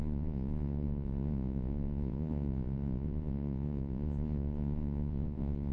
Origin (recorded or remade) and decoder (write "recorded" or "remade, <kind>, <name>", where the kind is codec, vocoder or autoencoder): remade, vocoder, Vocos